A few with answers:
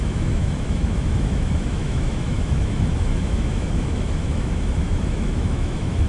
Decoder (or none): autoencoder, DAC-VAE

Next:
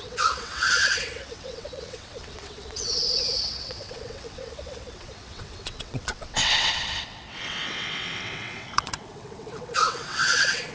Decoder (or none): vocoder, WaveNeXt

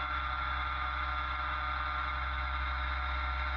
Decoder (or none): autoencoder, DAC-VAE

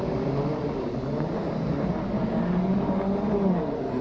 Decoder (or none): none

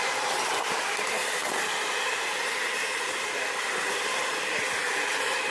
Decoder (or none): vocoder, BigVGAN v2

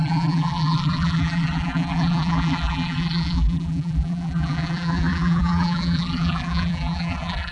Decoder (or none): vocoder, BigVGAN v2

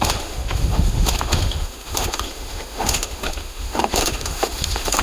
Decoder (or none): autoencoder, DAC-VAE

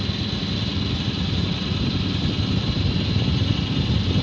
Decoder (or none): none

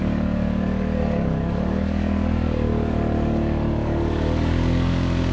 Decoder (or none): codec, DAC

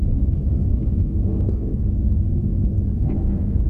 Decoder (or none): codec, SNAC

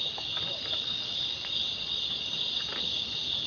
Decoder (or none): none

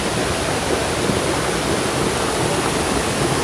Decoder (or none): none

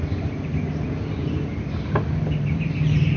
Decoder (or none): vocoder, BigVGAN v2